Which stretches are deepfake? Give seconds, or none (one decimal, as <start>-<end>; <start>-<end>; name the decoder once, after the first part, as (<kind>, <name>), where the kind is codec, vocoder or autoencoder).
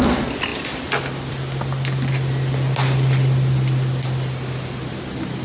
none